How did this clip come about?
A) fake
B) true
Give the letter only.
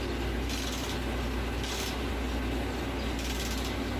B